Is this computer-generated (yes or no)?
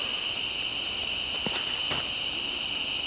no